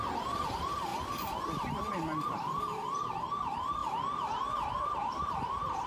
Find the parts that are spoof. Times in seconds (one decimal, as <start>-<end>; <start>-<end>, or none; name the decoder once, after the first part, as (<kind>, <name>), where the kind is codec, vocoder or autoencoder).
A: 0.0-0.9 (vocoder, BigVGAN v2); 1.8-3.8; 4.7-5.9